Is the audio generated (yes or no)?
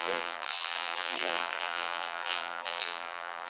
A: yes